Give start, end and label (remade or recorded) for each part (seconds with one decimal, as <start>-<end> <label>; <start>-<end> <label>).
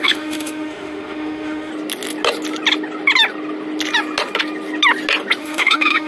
0.0-1.7 remade; 1.7-5.4 recorded; 5.4-6.1 remade